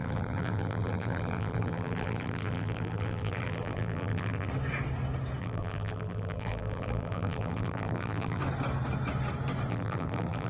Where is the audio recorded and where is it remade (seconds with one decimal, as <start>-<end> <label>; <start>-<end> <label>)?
0.0-4.5 remade; 4.5-5.4 recorded; 5.4-8.4 remade; 8.4-9.7 recorded; 9.7-10.5 remade